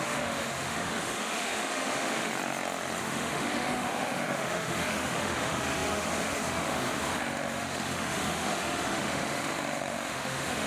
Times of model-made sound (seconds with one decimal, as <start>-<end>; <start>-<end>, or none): 0.0-2.3; 3.0-10.7